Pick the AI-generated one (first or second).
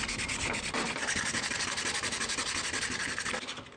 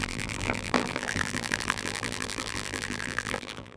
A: second